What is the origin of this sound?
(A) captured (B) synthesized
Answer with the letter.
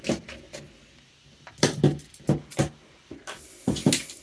A